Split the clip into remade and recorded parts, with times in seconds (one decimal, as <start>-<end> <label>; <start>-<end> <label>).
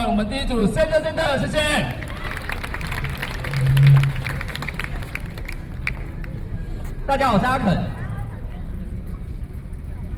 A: 0.0-0.6 recorded; 0.6-2.1 remade; 2.1-3.2 recorded; 3.2-3.7 remade; 3.7-4.5 recorded; 4.5-5.1 remade; 5.1-10.2 recorded